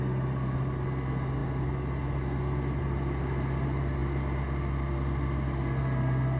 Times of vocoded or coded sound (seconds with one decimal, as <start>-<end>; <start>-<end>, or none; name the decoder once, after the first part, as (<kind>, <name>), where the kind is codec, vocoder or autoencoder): none